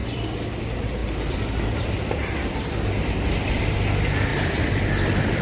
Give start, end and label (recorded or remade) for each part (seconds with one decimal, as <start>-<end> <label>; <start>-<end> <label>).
0.0-0.6 remade; 0.6-1.0 recorded; 1.0-1.9 remade; 1.9-4.3 recorded; 4.3-5.4 remade